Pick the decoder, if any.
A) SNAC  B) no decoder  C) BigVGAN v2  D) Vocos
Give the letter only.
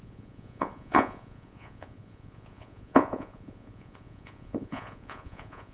D